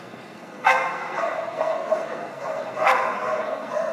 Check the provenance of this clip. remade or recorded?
remade